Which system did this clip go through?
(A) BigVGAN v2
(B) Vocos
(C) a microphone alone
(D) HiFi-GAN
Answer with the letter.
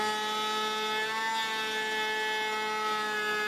C